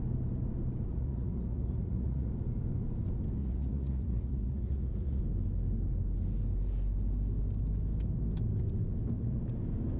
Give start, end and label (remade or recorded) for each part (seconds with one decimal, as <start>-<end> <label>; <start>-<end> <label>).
0.0-0.9 recorded; 0.9-2.3 remade; 2.3-3.4 recorded; 3.4-5.2 remade; 5.2-10.0 recorded